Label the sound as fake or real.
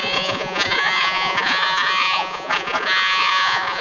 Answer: fake